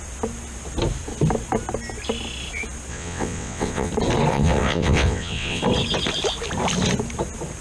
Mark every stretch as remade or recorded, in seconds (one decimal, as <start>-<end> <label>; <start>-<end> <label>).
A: 0.0-2.9 recorded; 2.9-3.9 remade; 3.9-4.3 recorded; 4.3-5.6 remade; 5.6-7.6 recorded